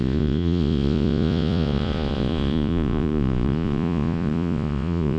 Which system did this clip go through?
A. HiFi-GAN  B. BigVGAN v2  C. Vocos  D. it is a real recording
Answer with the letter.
C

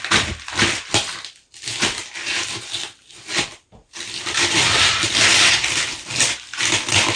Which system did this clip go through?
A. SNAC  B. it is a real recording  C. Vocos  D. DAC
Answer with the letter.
B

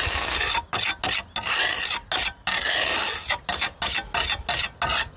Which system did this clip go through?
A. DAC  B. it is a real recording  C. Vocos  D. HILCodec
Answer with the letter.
B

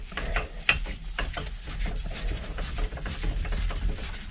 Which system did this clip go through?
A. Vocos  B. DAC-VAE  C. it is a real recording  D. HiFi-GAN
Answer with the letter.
C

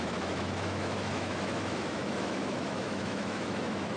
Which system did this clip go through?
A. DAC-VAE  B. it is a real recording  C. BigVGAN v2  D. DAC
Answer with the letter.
A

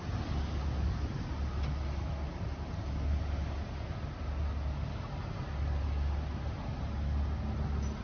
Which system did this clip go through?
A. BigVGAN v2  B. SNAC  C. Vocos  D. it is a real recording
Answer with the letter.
D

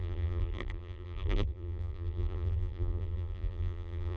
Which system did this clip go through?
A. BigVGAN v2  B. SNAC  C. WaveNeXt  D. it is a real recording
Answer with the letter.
A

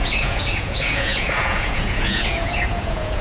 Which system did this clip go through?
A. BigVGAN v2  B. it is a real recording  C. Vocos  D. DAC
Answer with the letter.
C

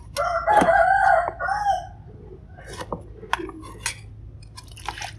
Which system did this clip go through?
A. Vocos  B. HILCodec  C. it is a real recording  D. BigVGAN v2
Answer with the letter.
C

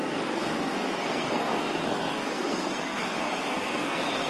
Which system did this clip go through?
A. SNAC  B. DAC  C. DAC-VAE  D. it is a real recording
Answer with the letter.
A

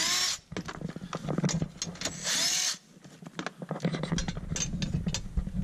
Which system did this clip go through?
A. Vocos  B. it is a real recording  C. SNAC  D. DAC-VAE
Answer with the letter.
B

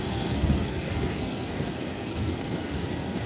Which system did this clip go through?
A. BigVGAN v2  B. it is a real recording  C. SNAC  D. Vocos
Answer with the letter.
C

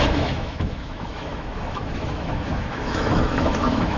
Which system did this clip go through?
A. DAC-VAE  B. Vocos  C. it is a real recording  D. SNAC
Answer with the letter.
A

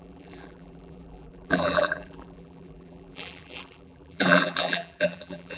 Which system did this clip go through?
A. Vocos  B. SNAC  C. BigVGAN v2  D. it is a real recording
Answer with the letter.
C